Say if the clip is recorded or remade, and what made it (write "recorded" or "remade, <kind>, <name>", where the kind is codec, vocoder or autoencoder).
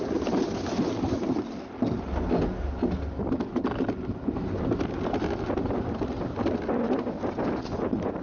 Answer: recorded